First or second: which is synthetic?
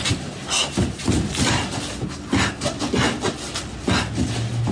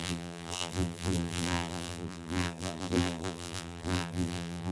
second